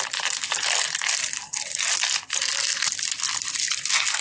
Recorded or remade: recorded